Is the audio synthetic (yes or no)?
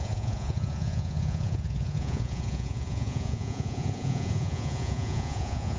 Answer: yes